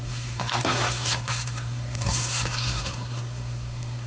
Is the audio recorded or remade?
remade